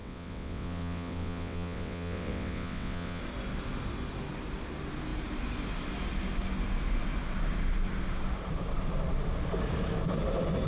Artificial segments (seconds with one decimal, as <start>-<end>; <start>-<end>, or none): 0.0-3.2